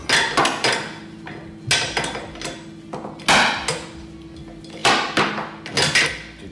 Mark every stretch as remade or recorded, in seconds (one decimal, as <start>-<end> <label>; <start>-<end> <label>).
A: 0.0-6.5 recorded